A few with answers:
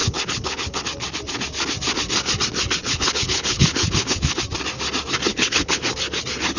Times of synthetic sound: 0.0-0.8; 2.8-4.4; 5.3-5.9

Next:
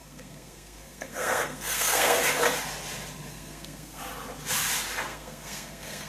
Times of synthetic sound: 0.0-2.2; 3.3-4.0; 5.1-6.1

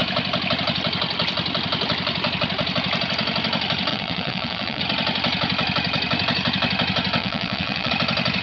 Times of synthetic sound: 3.9-4.8; 7.2-7.9